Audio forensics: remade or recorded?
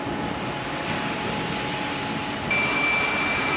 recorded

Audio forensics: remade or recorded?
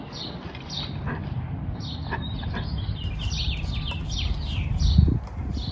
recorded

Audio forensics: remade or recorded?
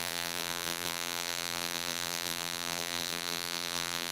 remade